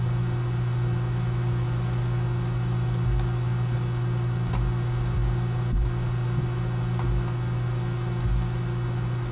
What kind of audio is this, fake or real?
real